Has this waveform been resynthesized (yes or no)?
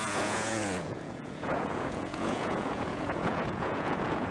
yes